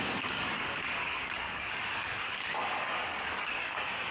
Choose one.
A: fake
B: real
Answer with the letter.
A